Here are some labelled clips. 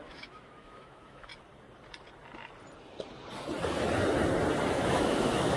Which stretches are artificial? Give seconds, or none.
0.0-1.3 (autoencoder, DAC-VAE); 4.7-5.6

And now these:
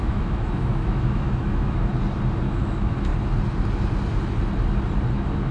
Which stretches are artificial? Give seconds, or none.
0.0-1.9 (autoencoder, DAC-VAE); 2.4-3.1; 5.1-5.5